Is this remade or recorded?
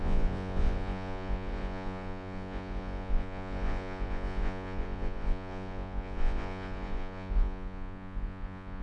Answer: remade